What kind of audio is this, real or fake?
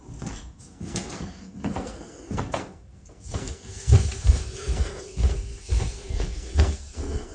fake